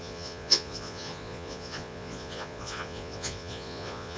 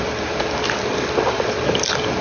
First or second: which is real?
second